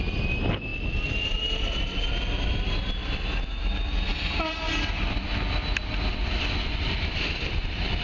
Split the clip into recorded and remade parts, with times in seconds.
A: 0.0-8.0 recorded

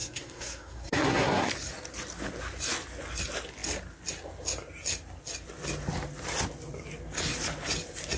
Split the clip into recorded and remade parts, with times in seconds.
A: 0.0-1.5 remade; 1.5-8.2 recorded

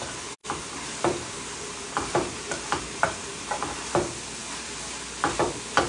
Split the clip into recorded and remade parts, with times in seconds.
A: 0.0-0.4 recorded; 0.4-3.9 remade; 3.9-5.9 recorded

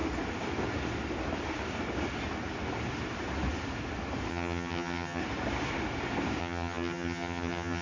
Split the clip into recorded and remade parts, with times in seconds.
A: 0.0-4.3 recorded; 4.3-5.2 remade; 5.2-6.4 recorded; 6.4-7.8 remade

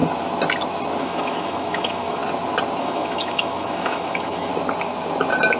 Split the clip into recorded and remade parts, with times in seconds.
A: 0.0-1.0 recorded; 1.0-2.2 remade; 2.2-2.8 recorded; 2.8-4.5 remade; 4.5-5.6 recorded